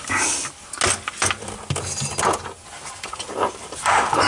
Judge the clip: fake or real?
real